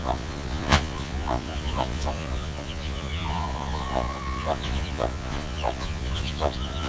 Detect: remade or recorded remade